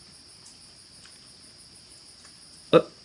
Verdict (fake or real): real